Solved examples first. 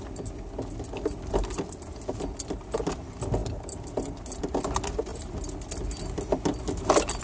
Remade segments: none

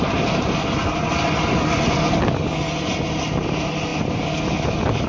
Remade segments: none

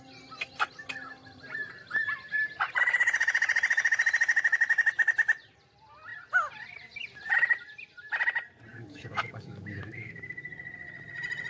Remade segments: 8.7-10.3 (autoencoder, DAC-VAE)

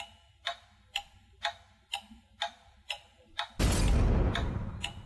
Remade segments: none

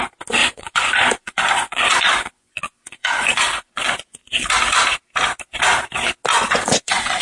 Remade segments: 0.4-4.2 (vocoder, Vocos); 6.3-7.2